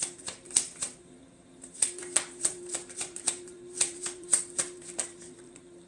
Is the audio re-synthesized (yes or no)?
yes